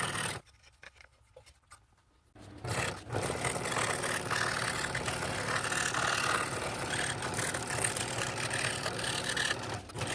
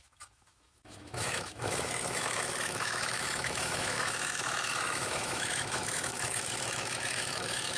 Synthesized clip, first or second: second